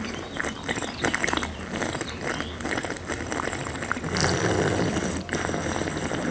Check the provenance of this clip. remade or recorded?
recorded